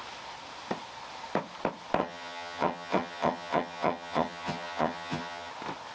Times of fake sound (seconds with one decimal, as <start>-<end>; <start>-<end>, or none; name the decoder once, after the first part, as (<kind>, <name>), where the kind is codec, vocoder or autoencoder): 2.0-5.5 (vocoder, HiFi-GAN)